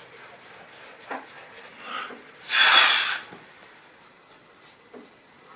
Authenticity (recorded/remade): recorded